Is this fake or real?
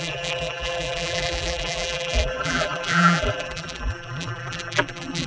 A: fake